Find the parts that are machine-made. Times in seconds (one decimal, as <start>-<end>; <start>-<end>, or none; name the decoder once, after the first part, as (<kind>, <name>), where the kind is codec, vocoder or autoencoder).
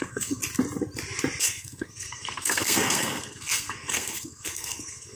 0.0-0.4 (codec, SNAC); 1.4-5.2